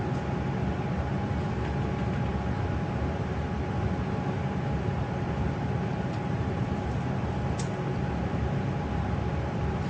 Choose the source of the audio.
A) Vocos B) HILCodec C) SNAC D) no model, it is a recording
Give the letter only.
D